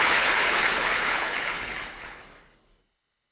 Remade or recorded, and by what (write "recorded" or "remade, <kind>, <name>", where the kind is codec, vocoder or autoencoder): remade, codec, HILCodec